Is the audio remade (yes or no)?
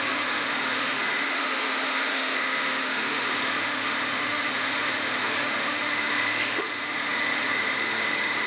yes